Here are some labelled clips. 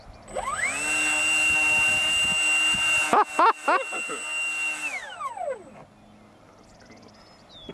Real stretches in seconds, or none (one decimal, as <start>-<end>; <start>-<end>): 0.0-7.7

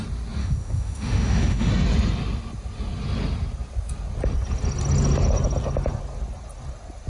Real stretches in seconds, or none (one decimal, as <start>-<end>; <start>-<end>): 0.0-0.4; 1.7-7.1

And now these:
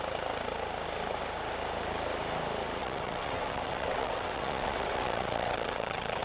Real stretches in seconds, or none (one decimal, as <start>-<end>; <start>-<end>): 0.0-2.8

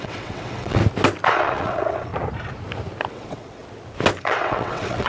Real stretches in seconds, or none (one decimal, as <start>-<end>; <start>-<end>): 0.8-1.3; 2.1-3.1; 3.6-4.2

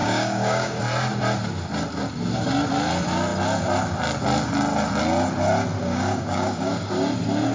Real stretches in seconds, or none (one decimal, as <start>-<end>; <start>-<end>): 0.8-5.8; 6.7-7.5